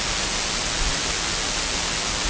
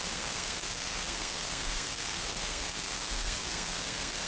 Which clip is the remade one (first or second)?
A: second